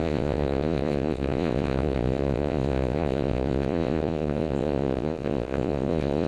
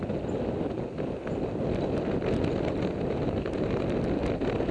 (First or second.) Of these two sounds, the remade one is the first